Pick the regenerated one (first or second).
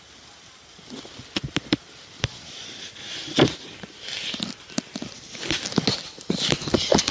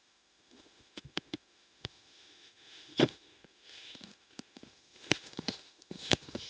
second